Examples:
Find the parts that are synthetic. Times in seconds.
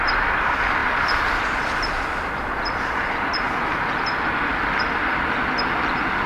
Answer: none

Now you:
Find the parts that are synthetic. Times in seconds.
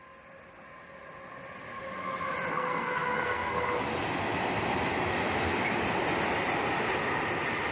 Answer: 2.5-3.8 (codec, SNAC)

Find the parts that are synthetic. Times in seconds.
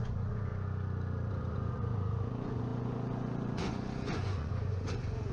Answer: 0.0-0.5 (vocoder, Vocos); 1.3-5.3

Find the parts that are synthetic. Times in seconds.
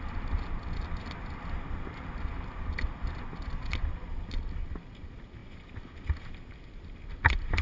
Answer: none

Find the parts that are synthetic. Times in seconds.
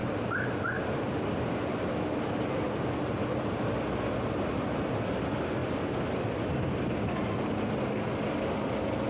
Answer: none